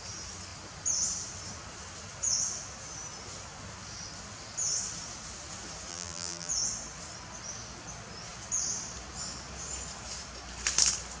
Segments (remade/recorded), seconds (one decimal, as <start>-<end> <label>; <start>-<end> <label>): 0.0-5.9 recorded; 5.9-6.5 remade; 6.5-11.2 recorded

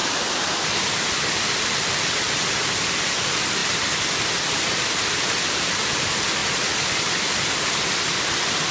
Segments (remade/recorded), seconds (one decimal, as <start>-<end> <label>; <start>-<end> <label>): 0.0-6.4 remade; 6.4-8.1 recorded; 8.1-8.7 remade

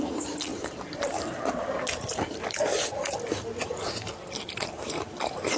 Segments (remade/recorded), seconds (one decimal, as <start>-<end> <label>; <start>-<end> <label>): 0.0-0.5 recorded; 0.5-3.0 remade; 3.0-3.5 recorded; 3.5-5.6 remade

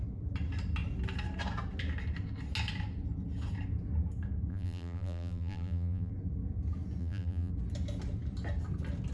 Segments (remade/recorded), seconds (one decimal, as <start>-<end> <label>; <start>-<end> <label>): 0.0-4.5 recorded; 4.5-6.1 remade; 6.1-7.0 recorded; 7.0-7.5 remade; 7.5-9.1 recorded